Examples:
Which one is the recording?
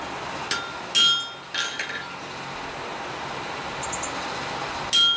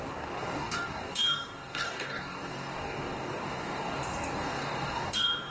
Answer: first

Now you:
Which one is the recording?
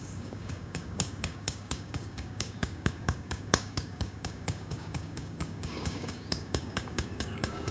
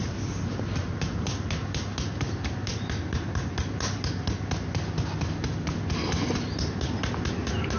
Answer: second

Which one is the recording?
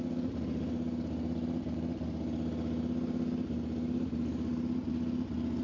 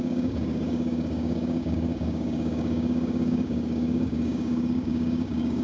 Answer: first